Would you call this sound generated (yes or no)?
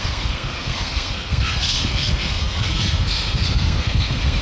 yes